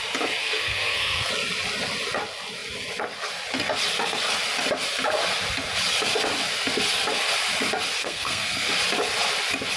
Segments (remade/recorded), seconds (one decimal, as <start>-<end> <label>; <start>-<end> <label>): 0.0-0.4 recorded; 0.4-1.3 remade; 1.3-8.0 recorded; 8.0-8.7 remade; 8.7-9.8 recorded